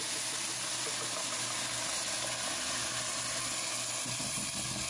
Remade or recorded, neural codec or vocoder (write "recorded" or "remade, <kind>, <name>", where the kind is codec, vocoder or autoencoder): recorded